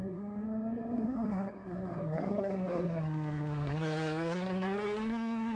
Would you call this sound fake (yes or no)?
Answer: yes